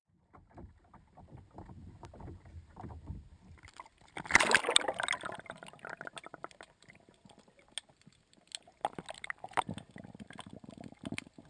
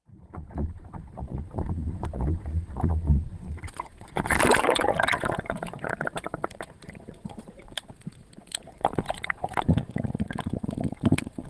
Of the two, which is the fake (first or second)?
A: second